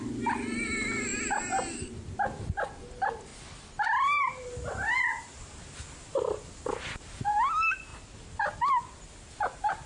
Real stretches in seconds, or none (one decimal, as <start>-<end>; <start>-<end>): 0.0-1.1; 1.9-9.9